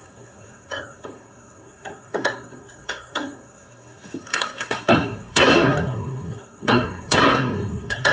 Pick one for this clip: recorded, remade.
remade